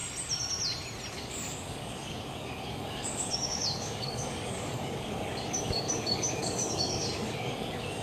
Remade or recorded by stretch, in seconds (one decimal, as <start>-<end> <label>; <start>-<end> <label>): 0.0-1.1 recorded; 1.1-8.0 remade